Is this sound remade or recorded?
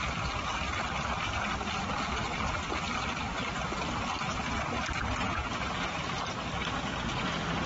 recorded